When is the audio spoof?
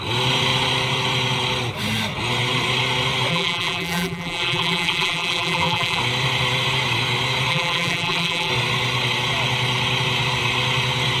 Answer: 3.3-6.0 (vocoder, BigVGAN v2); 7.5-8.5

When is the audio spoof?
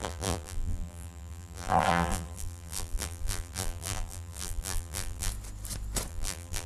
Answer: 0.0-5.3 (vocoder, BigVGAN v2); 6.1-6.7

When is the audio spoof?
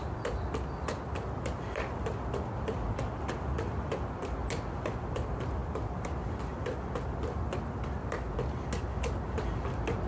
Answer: none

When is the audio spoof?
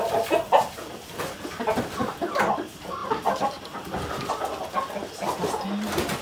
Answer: 3.0-4.3 (vocoder, BigVGAN v2)